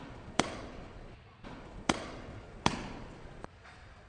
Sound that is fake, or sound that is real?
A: fake